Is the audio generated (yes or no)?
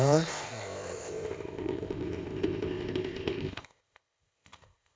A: yes